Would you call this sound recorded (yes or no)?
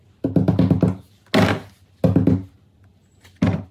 yes